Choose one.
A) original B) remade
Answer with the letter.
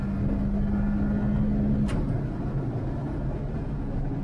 A